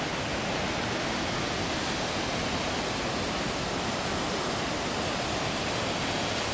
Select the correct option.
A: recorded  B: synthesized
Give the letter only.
A